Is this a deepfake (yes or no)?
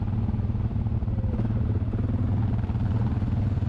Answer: no